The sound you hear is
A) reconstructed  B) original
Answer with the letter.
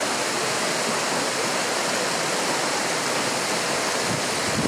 B